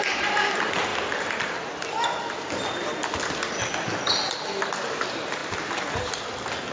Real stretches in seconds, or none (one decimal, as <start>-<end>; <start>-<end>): 0.0-6.7